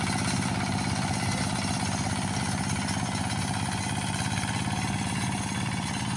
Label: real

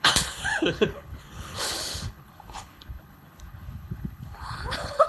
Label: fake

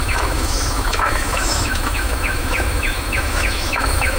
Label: fake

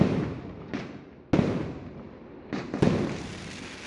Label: real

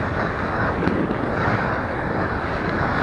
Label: fake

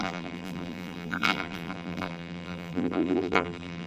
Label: fake